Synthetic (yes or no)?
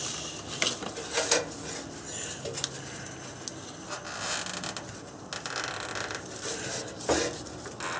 no